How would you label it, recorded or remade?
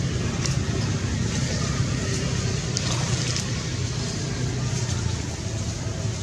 recorded